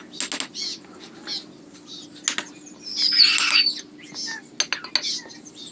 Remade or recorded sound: recorded